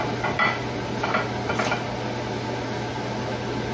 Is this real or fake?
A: real